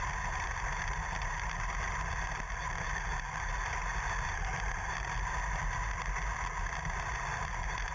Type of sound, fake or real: real